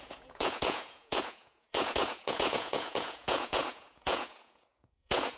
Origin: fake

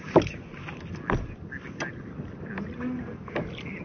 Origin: real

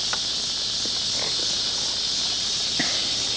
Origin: real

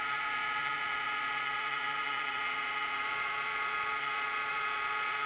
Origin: fake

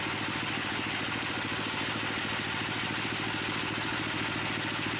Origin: real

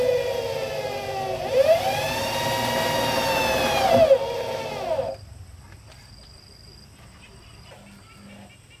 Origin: real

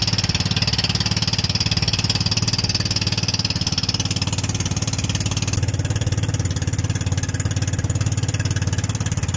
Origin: real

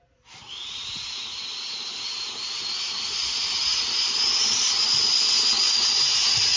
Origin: real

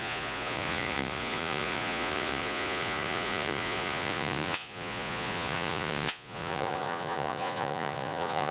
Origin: fake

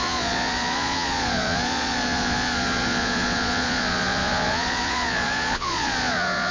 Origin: fake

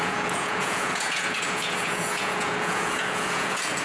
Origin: fake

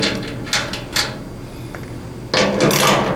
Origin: real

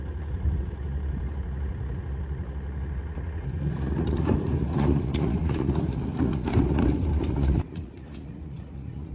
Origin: fake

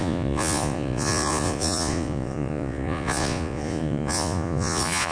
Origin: fake